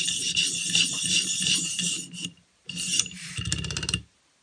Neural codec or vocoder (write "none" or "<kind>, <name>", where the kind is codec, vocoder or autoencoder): none